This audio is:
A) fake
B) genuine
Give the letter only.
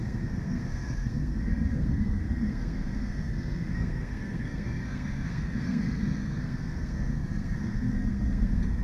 A